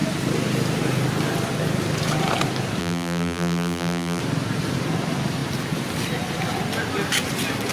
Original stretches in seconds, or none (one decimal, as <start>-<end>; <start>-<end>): 0.0-2.8; 4.2-7.7